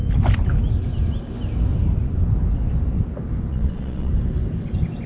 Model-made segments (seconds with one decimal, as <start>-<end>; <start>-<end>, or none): 3.5-4.1